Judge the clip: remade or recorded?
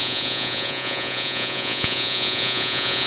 remade